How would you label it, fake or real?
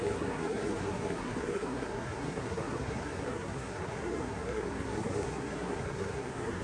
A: fake